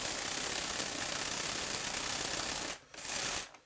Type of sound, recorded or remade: recorded